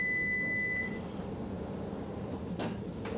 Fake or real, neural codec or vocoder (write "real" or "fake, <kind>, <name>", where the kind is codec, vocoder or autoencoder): real